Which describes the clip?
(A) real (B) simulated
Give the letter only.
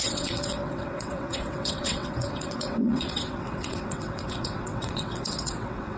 B